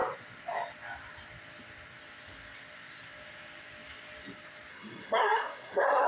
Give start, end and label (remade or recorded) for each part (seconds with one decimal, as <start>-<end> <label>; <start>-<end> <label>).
0.0-4.7 recorded; 4.7-6.1 remade